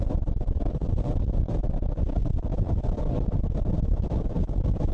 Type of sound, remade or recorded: recorded